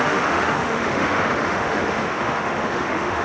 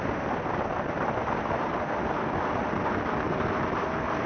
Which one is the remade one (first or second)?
first